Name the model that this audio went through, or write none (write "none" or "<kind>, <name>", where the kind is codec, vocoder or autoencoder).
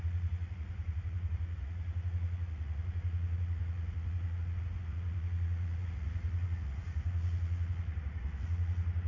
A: vocoder, Vocos